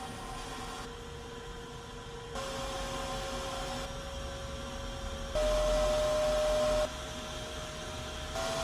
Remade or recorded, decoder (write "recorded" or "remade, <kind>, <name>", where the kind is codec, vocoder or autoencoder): recorded